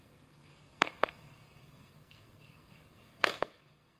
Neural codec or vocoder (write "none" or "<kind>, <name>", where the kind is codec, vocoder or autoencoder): codec, SNAC